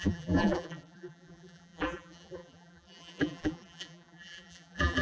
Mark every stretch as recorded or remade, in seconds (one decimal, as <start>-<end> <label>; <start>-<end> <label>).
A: 0.0-5.0 remade